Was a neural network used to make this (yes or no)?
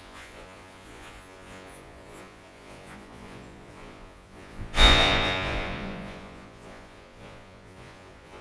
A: yes